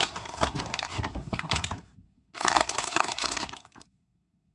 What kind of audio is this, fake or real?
fake